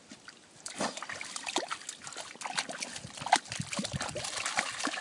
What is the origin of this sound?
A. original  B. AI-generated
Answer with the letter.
A